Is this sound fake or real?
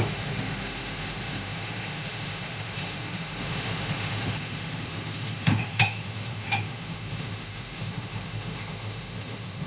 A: fake